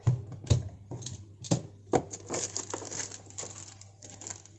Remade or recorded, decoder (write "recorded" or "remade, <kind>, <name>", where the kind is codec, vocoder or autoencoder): recorded